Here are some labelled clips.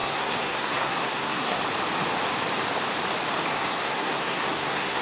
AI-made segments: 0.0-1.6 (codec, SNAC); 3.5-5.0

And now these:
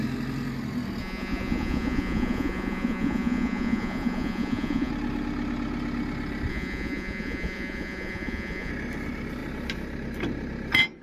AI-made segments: 1.0-4.9 (vocoder, Vocos); 6.5-8.7

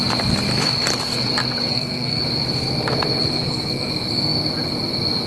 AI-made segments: 1.7-2.2 (codec, SNAC); 3.2-3.9

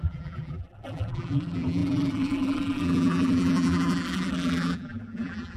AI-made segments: 0.0-5.6 (vocoder, BigVGAN v2)

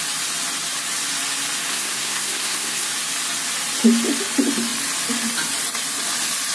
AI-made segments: 1.7-2.9 (codec, SNAC)

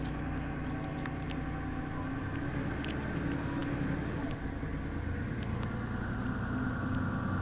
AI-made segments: none

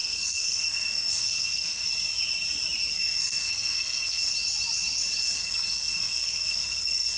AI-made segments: 0.0-1.8 (codec, SNAC); 2.9-4.3; 5.2-7.2